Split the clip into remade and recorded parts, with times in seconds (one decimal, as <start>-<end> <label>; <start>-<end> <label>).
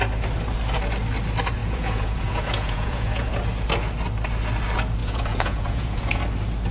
0.0-1.6 recorded; 1.6-3.3 remade; 3.3-5.0 recorded; 5.0-6.2 remade; 6.2-6.7 recorded